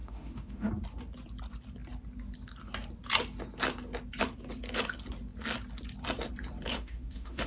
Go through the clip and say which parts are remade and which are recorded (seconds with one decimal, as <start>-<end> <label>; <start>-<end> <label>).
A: 0.0-0.7 remade; 0.7-6.7 recorded; 6.7-7.5 remade

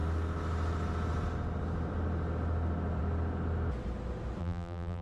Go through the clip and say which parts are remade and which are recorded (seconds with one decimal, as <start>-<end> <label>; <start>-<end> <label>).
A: 0.0-4.4 recorded; 4.4-5.0 remade

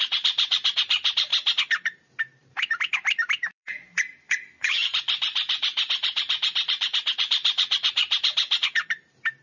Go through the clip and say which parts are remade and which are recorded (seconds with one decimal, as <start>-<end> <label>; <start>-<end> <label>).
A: 0.0-1.3 remade; 1.3-2.2 recorded; 2.2-9.4 remade

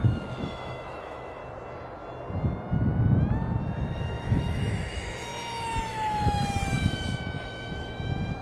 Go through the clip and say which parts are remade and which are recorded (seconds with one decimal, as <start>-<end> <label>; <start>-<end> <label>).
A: 0.0-1.4 remade; 1.4-3.8 recorded; 3.8-5.3 remade; 5.3-5.8 recorded; 5.8-8.4 remade